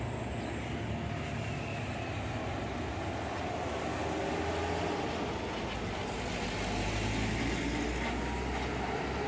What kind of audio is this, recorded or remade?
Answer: recorded